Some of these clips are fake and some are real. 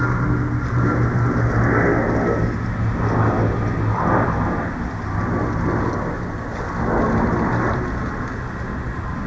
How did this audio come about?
real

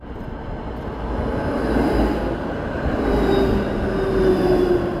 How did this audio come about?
real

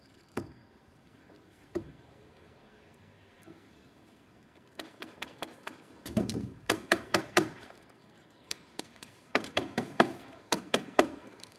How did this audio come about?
fake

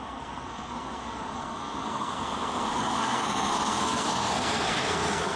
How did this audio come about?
fake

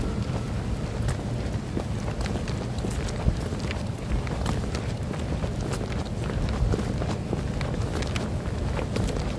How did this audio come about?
real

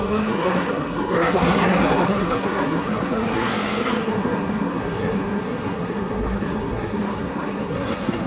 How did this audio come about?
fake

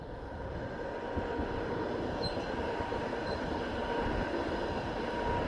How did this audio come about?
real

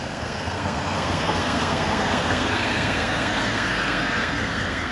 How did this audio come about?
fake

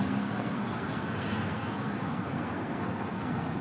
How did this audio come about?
fake